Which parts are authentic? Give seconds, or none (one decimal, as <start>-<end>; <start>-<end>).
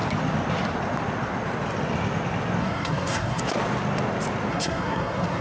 0.0-2.6; 3.4-4.5